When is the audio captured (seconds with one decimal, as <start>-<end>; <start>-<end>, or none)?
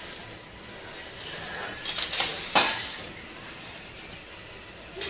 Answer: 0.0-2.3; 4.0-5.1